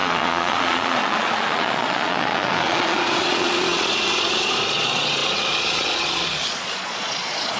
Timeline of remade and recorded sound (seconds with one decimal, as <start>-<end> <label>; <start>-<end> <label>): 0.0-7.6 remade